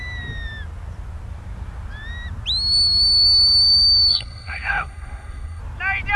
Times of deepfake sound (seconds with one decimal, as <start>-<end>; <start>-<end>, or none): 4.1-5.6